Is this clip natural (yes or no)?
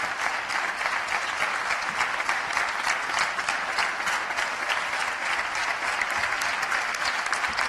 yes